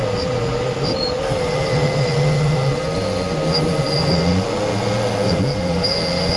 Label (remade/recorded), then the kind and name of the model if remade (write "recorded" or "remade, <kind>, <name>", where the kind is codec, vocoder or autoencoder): recorded